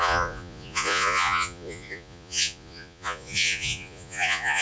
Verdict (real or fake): fake